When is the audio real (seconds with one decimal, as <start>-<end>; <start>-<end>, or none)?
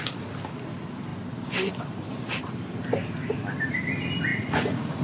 0.0-4.3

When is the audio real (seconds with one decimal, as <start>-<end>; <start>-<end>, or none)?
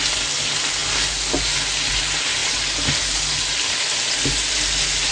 0.0-5.1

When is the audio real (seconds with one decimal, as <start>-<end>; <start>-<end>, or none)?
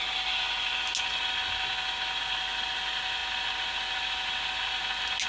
0.0-5.3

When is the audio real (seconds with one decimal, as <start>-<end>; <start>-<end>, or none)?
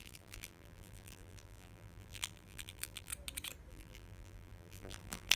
3.1-3.7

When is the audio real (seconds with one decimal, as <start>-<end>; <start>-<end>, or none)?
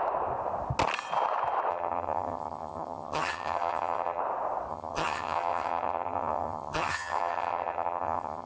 0.0-1.7; 4.2-4.7